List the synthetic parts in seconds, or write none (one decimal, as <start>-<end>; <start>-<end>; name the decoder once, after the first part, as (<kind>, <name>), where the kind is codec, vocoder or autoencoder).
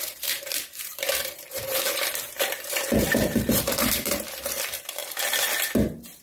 0.0-5.0 (vocoder, BigVGAN v2)